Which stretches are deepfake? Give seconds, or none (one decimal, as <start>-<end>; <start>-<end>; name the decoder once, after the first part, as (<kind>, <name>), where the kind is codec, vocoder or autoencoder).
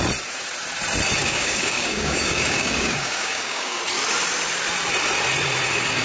1.2-3.8 (codec, DAC)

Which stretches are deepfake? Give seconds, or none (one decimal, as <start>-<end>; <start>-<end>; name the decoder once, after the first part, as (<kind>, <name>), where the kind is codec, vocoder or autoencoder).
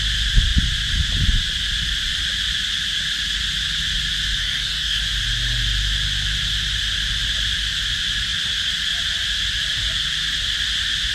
4.4-5.0 (codec, DAC)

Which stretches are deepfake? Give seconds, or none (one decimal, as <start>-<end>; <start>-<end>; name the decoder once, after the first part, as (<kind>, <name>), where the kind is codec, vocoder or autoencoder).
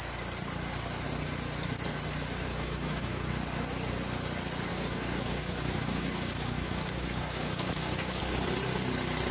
2.5-3.3 (codec, DAC); 4.7-8.2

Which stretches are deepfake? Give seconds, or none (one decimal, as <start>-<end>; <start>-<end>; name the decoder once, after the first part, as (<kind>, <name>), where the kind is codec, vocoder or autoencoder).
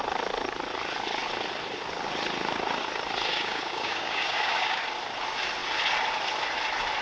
3.3-4.8 (codec, DAC)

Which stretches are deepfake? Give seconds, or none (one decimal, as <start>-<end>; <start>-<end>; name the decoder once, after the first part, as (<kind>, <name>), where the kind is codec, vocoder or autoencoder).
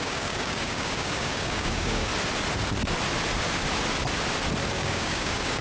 0.0-2.1 (codec, DAC); 4.7-5.6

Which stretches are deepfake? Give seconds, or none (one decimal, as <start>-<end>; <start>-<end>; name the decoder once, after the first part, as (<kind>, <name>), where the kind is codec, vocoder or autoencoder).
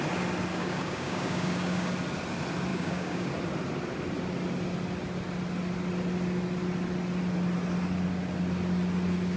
0.5-1.9 (codec, DAC); 2.7-3.3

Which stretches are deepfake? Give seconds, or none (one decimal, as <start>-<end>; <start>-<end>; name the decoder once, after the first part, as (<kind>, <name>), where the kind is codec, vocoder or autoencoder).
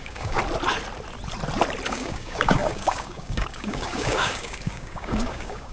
0.0-0.4 (codec, DAC); 1.9-5.7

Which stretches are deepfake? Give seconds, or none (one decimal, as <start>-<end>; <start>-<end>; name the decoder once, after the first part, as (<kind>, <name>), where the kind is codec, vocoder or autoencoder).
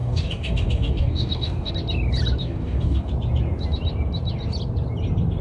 0.0-1.7 (codec, DAC); 2.4-3.1